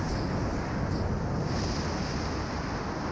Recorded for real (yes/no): yes